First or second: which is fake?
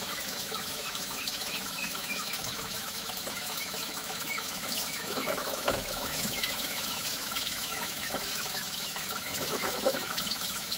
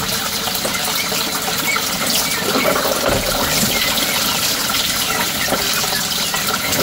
first